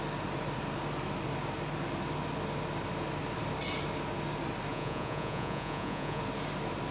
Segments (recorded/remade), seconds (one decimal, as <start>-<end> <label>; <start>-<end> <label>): 0.0-4.7 recorded; 4.7-6.2 remade; 6.2-6.9 recorded